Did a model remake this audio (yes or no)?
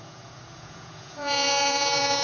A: yes